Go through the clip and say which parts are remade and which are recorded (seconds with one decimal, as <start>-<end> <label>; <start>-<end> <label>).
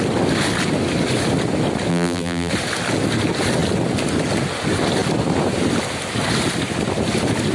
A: 0.0-1.9 recorded; 1.9-2.5 remade; 2.5-7.5 recorded